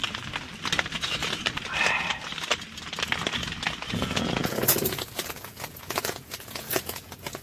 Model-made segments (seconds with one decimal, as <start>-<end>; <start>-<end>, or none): 3.9-7.4